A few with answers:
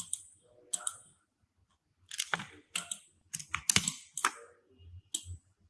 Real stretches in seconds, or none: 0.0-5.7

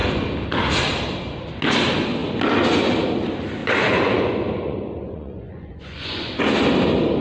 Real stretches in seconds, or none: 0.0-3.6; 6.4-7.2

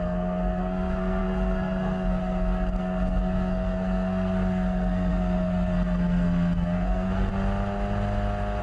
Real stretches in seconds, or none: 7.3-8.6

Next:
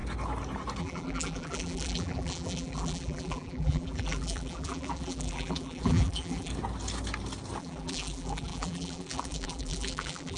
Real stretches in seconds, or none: 0.0-0.8; 6.5-7.6

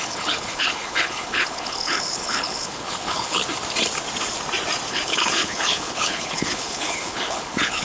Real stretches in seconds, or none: 3.4-4.9

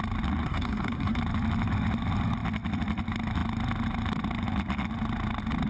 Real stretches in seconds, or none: 0.0-0.4; 1.2-5.7

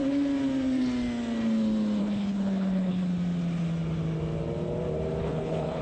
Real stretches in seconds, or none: 0.0-2.0; 3.1-5.2